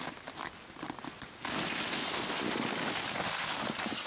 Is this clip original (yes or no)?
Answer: yes